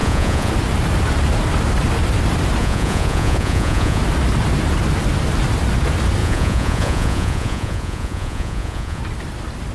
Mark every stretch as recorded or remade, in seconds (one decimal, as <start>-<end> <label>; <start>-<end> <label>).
0.0-0.5 remade; 0.5-2.6 recorded; 2.6-4.0 remade; 4.0-6.2 recorded; 6.2-9.0 remade; 9.0-9.7 recorded